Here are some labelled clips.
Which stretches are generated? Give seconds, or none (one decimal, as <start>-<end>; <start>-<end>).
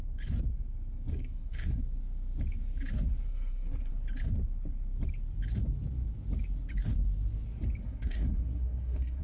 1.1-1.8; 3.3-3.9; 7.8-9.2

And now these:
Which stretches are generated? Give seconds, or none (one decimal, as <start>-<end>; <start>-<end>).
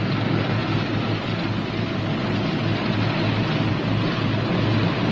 none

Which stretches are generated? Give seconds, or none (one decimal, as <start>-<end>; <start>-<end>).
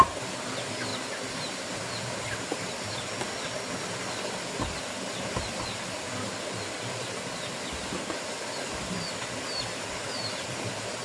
none